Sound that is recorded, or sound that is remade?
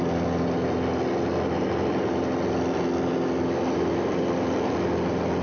recorded